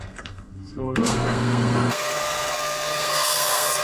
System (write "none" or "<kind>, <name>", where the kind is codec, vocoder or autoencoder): codec, SNAC